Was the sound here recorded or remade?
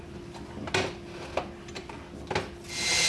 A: recorded